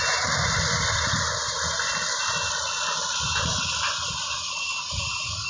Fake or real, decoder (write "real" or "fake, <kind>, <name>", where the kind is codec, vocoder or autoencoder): real